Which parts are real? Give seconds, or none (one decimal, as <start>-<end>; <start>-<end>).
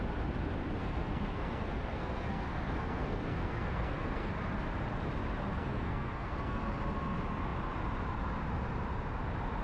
0.0-0.8; 4.3-5.5; 6.6-9.6